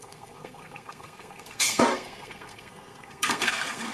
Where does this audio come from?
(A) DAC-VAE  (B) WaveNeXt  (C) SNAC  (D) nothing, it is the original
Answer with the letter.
C